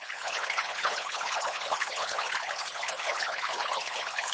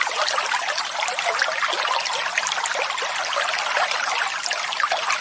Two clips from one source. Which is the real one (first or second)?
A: second